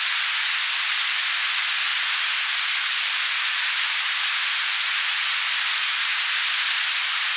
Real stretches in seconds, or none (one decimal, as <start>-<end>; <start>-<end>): 0.0-4.6; 5.2-7.4